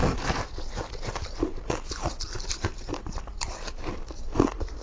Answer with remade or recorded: recorded